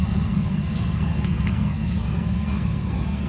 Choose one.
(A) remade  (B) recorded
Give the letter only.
A